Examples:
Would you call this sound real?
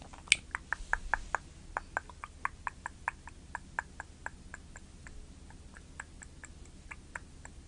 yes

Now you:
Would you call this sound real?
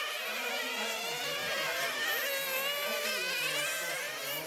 yes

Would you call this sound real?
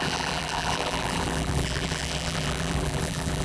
no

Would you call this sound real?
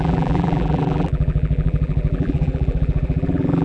no